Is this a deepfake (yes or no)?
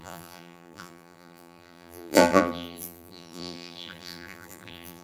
yes